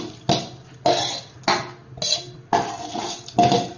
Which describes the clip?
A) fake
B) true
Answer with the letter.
B